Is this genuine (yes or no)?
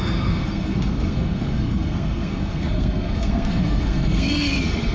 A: no